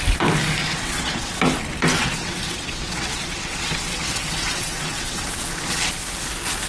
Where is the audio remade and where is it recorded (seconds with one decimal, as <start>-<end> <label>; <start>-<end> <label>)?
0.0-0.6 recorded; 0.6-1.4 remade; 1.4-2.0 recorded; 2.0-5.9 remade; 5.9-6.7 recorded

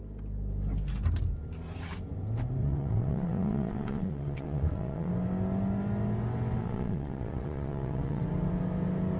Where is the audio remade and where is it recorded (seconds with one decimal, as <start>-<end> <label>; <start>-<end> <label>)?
0.0-2.6 recorded; 2.6-5.1 remade; 5.1-6.6 recorded; 6.6-8.2 remade; 8.2-9.2 recorded

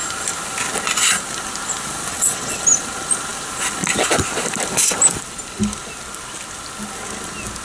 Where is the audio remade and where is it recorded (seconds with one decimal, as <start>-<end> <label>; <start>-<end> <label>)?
0.0-2.1 recorded; 2.1-2.6 remade; 2.6-7.6 recorded

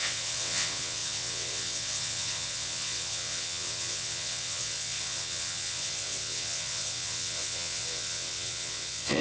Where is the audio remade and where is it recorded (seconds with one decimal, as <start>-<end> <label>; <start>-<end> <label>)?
0.0-9.2 remade

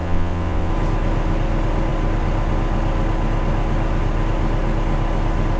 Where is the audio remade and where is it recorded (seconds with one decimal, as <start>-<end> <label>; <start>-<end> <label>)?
0.0-0.7 remade; 0.7-5.6 recorded